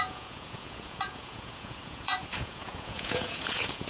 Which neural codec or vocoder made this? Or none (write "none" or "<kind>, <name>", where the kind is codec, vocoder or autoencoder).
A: vocoder, Vocos